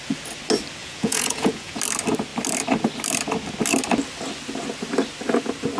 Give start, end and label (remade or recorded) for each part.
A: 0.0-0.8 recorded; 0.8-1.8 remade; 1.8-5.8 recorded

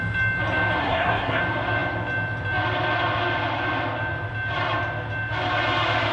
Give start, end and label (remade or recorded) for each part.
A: 0.0-0.8 recorded; 0.8-1.4 remade; 1.4-6.1 recorded

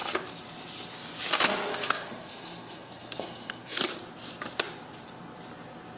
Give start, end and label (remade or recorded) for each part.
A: 0.0-1.7 recorded; 1.7-3.9 remade; 3.9-6.0 recorded

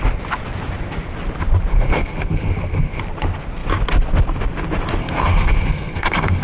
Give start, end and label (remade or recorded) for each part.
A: 0.0-1.7 recorded; 1.7-3.0 remade; 3.0-5.0 recorded; 5.0-6.4 remade

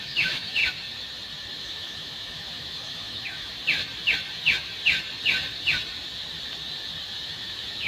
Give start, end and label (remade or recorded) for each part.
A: 0.0-0.6 remade; 0.6-1.6 recorded; 1.6-3.5 remade; 3.5-7.2 recorded; 7.2-7.9 remade

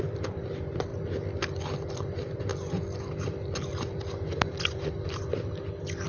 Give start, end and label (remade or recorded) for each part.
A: 0.0-0.9 remade; 0.9-1.6 recorded; 1.6-2.5 remade; 2.5-4.6 recorded; 4.6-6.1 remade